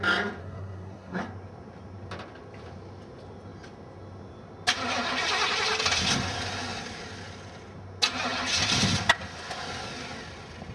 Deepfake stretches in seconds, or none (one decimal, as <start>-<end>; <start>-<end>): 0.4-1.2